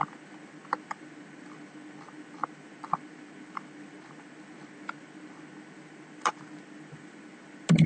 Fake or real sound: real